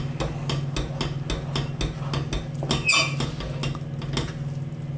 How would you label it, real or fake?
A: real